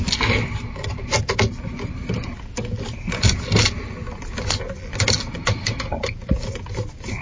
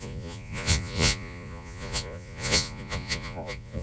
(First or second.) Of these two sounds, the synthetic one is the second